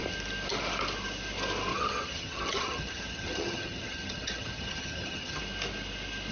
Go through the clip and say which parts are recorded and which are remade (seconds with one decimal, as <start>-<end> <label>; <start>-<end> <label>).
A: 0.0-1.7 recorded; 1.7-5.4 remade; 5.4-6.3 recorded